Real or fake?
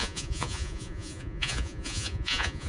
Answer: fake